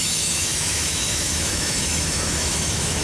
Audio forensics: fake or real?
fake